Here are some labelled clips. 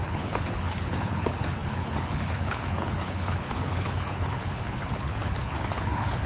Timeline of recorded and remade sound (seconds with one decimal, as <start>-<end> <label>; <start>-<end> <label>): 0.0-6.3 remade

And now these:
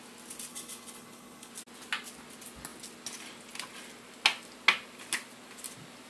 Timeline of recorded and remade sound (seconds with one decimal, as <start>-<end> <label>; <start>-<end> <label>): 0.0-0.5 recorded; 0.5-1.5 remade; 1.5-6.1 recorded

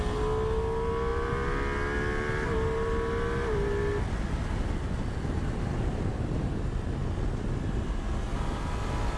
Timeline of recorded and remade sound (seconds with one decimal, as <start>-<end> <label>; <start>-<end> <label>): 0.0-9.2 recorded